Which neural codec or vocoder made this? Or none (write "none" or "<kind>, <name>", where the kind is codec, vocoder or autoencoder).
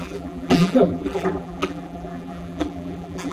vocoder, BigVGAN v2